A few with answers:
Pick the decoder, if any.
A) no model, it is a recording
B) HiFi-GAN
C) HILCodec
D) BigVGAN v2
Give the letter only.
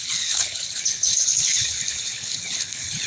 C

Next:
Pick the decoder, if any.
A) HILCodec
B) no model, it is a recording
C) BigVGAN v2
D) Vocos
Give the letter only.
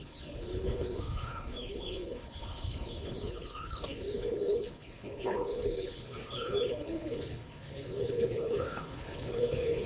A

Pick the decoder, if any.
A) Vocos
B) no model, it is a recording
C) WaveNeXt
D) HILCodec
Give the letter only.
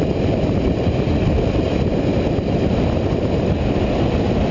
B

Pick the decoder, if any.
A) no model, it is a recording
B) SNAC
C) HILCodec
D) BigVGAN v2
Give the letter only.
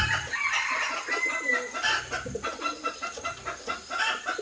A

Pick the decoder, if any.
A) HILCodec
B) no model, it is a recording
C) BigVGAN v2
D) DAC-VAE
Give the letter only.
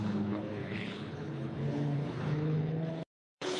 A